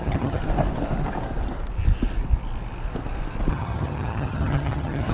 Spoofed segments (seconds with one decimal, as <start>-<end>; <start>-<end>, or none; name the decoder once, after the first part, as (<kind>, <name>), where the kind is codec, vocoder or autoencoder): 0.0-0.4 (vocoder, HiFi-GAN); 3.5-5.1